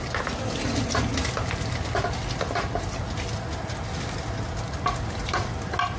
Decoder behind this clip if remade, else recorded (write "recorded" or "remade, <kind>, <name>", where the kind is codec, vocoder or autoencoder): recorded